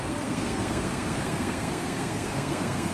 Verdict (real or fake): fake